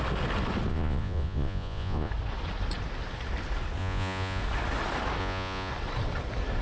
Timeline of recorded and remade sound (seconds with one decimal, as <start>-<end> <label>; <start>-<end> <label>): 0.0-0.7 recorded; 0.7-2.1 remade; 2.1-3.8 recorded; 3.8-4.4 remade; 4.4-5.2 recorded; 5.2-5.7 remade; 5.7-6.6 recorded